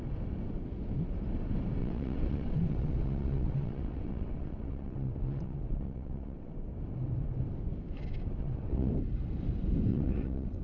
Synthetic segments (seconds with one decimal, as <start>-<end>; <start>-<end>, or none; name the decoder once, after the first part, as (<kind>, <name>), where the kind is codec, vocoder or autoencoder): 1.8-6.5 (vocoder, WaveNeXt); 8.4-8.9; 9.9-10.6